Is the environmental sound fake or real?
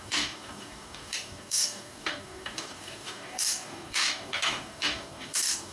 fake